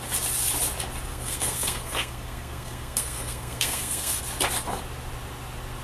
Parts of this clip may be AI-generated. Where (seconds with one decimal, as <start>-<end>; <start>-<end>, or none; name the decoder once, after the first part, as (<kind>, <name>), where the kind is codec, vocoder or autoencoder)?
1.1-4.2 (codec, SNAC)